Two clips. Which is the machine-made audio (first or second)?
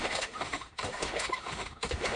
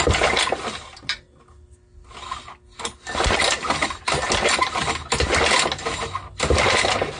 first